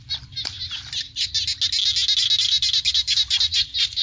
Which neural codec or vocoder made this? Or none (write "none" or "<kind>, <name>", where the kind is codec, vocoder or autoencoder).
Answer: none